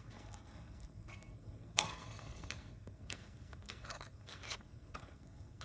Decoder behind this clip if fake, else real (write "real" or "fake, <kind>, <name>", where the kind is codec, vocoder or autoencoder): fake, codec, SNAC